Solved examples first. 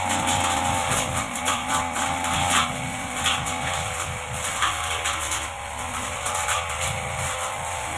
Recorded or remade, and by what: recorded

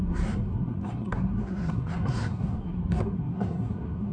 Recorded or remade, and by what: remade, codec, SNAC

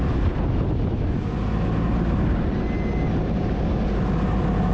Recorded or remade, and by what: recorded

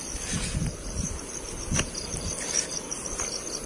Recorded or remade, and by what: recorded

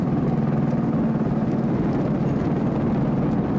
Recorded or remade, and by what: recorded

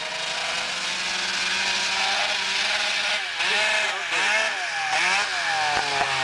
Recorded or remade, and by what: recorded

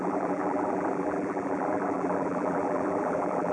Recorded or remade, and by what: remade, vocoder, BigVGAN v2